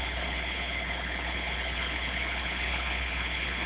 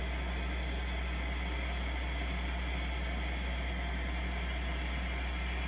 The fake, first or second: first